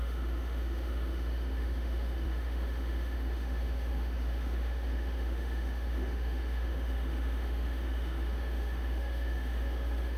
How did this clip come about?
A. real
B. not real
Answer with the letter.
B